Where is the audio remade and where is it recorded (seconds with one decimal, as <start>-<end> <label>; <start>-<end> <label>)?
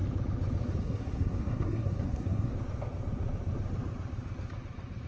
0.0-0.8 recorded; 0.8-2.5 remade; 2.5-5.1 recorded